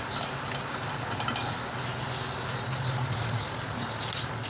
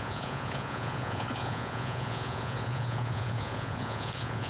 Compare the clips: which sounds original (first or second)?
first